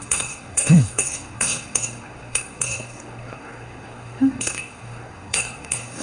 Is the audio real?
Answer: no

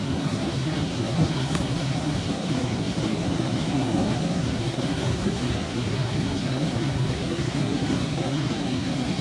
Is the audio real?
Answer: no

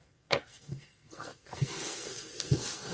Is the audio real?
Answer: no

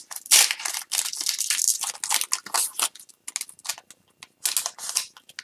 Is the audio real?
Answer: yes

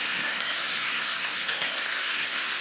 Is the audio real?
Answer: no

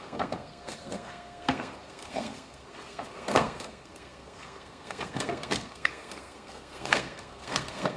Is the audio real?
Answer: no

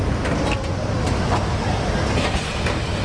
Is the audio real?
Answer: yes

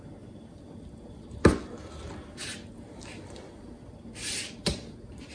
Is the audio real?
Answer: yes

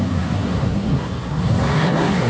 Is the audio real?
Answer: no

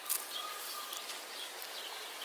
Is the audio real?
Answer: yes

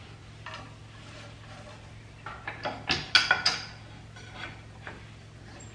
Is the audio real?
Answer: yes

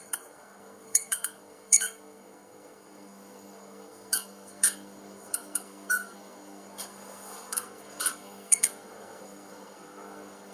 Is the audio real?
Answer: no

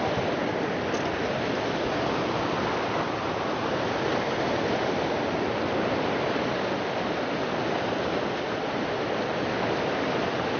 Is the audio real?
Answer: yes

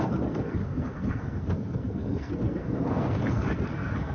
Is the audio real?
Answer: no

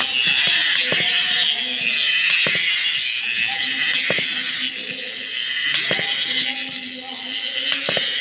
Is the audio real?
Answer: yes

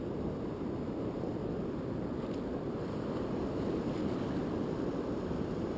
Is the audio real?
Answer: yes